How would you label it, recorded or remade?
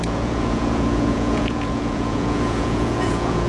remade